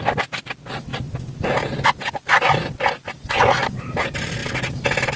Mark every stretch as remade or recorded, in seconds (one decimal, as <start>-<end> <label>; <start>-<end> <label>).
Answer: 0.0-5.2 recorded